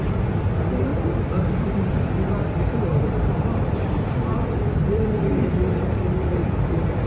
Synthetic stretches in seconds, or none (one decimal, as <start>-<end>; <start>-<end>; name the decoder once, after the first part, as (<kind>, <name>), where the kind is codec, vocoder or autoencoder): 0.9-1.9 (vocoder, BigVGAN v2); 2.9-7.1